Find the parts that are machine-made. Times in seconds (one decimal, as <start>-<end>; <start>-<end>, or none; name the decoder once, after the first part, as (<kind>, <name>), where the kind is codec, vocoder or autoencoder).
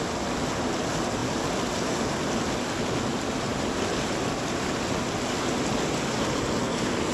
3.5-4.6 (vocoder, BigVGAN v2)